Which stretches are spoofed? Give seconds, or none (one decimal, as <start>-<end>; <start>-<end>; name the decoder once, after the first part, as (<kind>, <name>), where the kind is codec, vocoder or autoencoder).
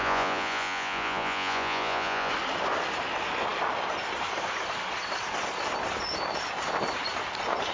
0.0-2.3 (vocoder, Vocos)